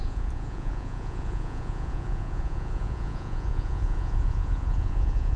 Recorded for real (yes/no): no